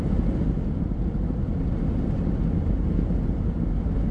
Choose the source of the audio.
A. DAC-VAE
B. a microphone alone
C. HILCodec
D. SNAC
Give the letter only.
B